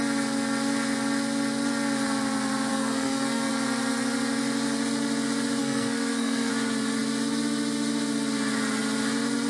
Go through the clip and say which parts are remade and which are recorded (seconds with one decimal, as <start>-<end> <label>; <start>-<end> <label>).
0.0-2.7 recorded; 2.7-3.5 remade; 3.5-5.6 recorded; 5.6-6.5 remade; 6.5-9.5 recorded